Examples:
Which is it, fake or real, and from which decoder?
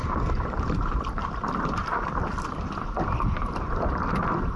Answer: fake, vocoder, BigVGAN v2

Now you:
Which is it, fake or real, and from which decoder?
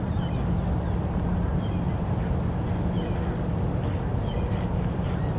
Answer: real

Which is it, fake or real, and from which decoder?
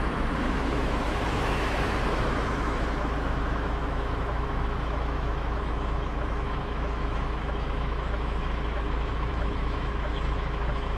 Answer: fake, autoencoder, DAC-VAE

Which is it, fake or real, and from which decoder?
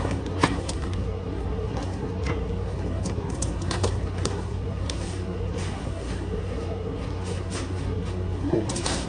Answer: fake, codec, SNAC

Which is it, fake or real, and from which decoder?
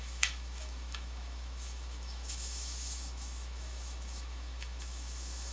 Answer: fake, autoencoder, DAC-VAE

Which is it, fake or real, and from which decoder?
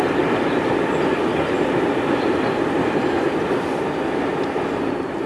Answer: fake, vocoder, BigVGAN v2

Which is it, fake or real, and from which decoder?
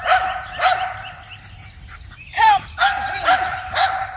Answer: fake, vocoder, BigVGAN v2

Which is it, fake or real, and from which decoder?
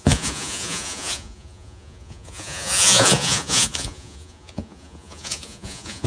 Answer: fake, vocoder, Vocos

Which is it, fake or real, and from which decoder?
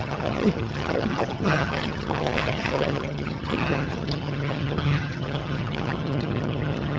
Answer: fake, vocoder, HiFi-GAN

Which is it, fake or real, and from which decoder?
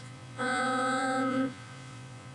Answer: fake, vocoder, Vocos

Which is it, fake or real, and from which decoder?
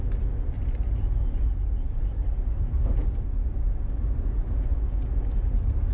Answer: real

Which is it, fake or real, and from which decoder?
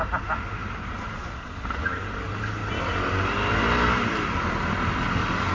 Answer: real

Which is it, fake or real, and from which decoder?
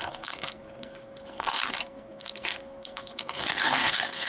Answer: fake, codec, SNAC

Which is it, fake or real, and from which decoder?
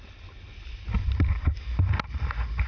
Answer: real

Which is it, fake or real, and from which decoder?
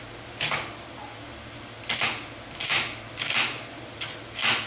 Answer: real